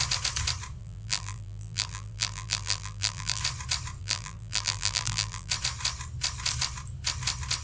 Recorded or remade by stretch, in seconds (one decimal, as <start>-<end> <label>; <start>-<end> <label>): 0.0-0.8 recorded; 0.8-3.4 remade; 3.4-4.0 recorded; 4.0-5.5 remade; 5.5-7.6 recorded